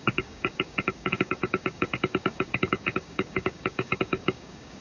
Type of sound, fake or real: fake